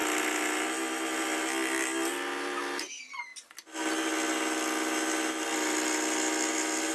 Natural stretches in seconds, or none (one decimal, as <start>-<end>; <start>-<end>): 0.0-6.9